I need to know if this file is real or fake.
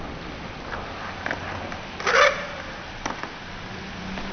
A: real